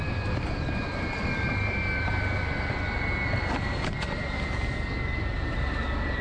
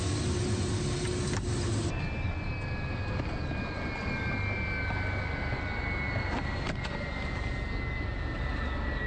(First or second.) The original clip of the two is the second